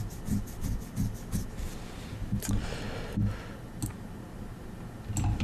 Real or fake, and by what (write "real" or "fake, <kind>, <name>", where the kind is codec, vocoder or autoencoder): real